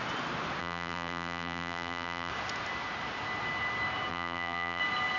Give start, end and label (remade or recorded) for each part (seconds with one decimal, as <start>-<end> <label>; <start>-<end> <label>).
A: 0.0-0.6 recorded; 0.6-2.3 remade; 2.3-4.1 recorded; 4.1-4.8 remade; 4.8-5.2 recorded